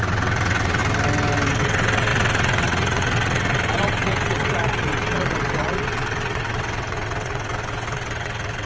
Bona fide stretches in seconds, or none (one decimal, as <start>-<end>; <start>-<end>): 0.8-1.5